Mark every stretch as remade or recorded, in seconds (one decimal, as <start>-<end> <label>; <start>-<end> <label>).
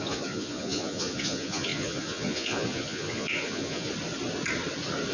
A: 0.0-3.9 remade; 3.9-5.1 recorded